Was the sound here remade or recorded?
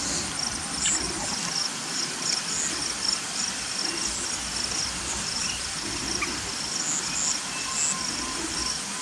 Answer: recorded